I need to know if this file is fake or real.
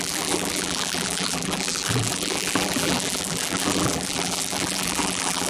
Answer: fake